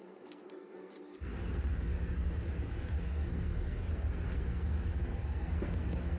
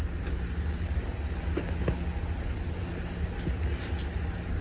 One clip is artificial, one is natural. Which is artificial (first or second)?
first